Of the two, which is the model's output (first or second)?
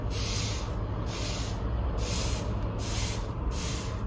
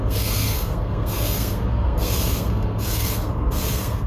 second